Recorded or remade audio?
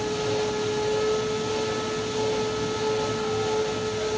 recorded